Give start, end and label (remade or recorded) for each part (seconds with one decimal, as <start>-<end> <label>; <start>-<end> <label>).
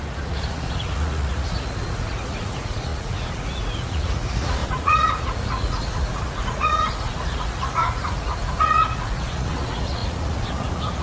0.0-11.0 remade